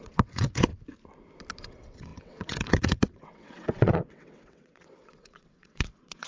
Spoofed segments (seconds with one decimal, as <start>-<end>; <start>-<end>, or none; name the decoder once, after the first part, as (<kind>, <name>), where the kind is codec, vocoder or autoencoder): 0.0-0.7 (vocoder, WaveNeXt); 1.6-6.3